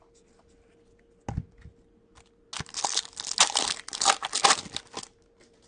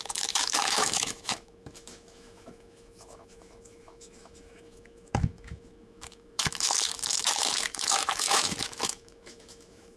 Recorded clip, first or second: first